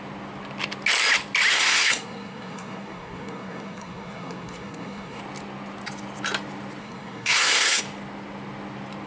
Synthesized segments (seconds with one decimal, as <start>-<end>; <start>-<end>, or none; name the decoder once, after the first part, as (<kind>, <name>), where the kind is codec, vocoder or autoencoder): 1.5-5.2 (codec, SNAC); 6.8-7.8